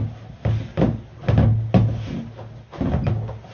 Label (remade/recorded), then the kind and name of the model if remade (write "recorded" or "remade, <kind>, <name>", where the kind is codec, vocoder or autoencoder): recorded